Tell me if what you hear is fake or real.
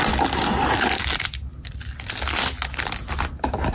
real